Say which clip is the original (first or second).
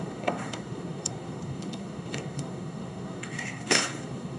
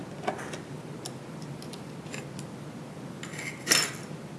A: second